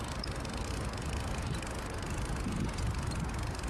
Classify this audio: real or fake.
real